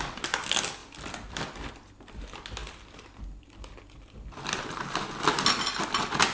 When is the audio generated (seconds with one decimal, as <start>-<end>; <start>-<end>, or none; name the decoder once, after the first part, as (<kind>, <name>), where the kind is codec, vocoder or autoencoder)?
none